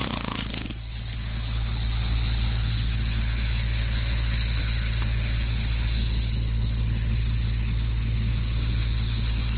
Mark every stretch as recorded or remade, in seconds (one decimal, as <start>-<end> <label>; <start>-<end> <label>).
0.0-9.6 remade